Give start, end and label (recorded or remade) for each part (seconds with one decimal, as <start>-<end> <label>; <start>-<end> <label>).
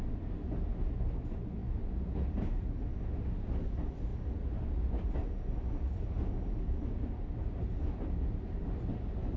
0.0-9.4 recorded